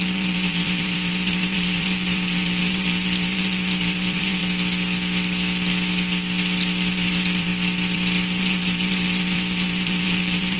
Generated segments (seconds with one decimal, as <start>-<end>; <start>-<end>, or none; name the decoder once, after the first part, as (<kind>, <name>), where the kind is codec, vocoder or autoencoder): 0.0-4.4 (vocoder, BigVGAN v2); 6.9-7.5; 8.4-10.6